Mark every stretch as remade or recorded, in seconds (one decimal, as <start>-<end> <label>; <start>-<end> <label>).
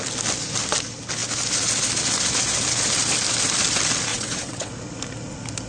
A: 0.0-4.1 recorded; 4.1-4.7 remade; 4.7-5.7 recorded